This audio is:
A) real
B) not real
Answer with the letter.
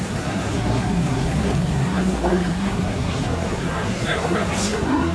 B